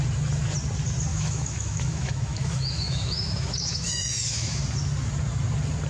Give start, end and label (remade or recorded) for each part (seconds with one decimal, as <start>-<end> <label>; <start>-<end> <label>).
0.0-1.1 recorded; 1.1-4.6 remade; 4.6-5.9 recorded